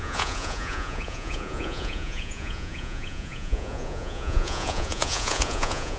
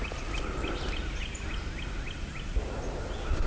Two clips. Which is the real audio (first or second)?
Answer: second